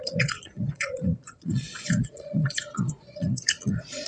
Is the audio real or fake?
fake